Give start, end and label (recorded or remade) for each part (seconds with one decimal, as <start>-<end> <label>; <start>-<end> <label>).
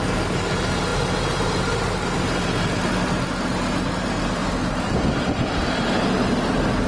0.0-6.9 recorded